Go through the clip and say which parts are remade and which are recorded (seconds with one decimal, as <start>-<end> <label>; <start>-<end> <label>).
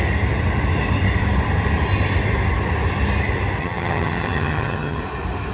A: 0.0-3.6 recorded; 3.6-5.0 remade; 5.0-5.5 recorded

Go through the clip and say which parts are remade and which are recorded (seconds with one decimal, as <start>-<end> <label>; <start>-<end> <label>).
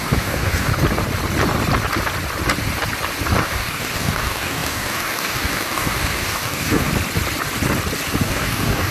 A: 0.0-0.7 remade; 0.7-3.4 recorded; 3.4-6.9 remade; 6.9-8.2 recorded; 8.2-8.9 remade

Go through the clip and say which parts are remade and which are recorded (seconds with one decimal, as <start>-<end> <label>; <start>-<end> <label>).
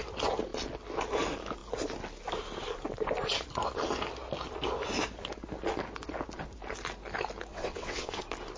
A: 0.0-7.5 recorded; 7.5-8.2 remade; 8.2-8.6 recorded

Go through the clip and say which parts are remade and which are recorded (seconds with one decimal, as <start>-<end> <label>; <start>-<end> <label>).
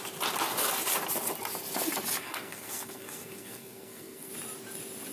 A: 0.0-2.2 recorded; 2.2-4.3 remade; 4.3-5.1 recorded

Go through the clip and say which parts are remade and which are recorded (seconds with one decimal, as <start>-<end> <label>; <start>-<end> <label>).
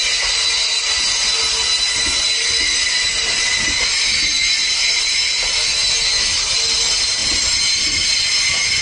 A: 0.0-8.8 recorded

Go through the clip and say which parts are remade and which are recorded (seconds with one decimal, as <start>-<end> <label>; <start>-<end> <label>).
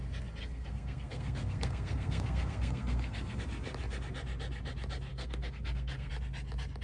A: 0.0-0.4 recorded; 0.4-3.4 remade; 3.4-5.1 recorded; 5.1-6.1 remade; 6.1-6.8 recorded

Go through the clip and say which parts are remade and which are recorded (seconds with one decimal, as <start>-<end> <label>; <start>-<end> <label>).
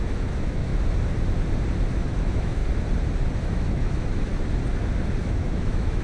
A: 0.0-0.7 remade; 0.7-1.9 recorded; 1.9-2.6 remade; 2.6-3.4 recorded; 3.4-4.3 remade; 4.3-5.2 recorded; 5.2-6.0 remade